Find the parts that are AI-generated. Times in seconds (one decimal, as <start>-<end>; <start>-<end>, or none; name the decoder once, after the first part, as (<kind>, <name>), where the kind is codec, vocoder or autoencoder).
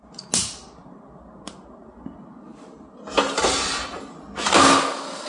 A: none